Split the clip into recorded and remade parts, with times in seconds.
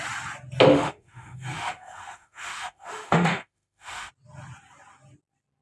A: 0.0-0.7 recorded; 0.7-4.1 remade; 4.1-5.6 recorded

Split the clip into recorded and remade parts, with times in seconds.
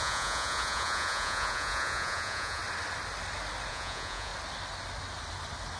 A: 0.0-2.6 remade; 2.6-3.7 recorded; 3.7-4.3 remade; 4.3-5.8 recorded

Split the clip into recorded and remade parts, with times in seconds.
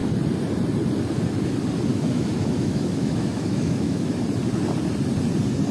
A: 0.0-1.9 recorded; 1.9-4.1 remade; 4.1-5.7 recorded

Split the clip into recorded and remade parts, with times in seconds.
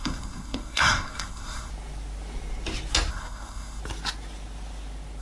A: 0.0-1.7 remade; 1.7-3.1 recorded; 3.1-3.8 remade; 3.8-5.2 recorded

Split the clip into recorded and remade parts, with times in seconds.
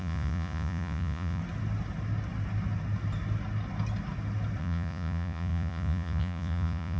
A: 0.0-1.4 remade; 1.4-4.6 recorded; 4.6-7.0 remade